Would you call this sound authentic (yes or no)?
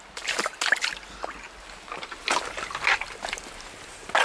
yes